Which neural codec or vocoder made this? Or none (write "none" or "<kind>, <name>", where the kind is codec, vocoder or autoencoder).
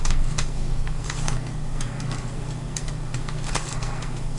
codec, SNAC